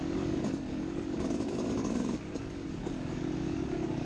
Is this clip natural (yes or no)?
no